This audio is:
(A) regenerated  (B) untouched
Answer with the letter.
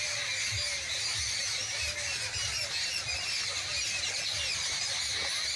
B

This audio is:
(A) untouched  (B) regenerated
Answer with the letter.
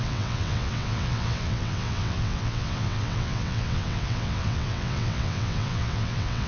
B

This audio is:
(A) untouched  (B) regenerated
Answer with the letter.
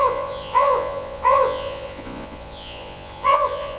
B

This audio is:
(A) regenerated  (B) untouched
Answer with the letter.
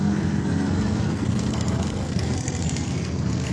A